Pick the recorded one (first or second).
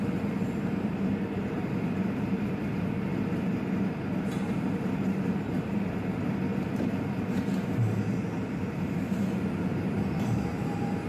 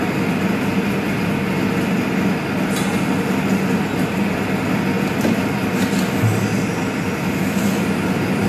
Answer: second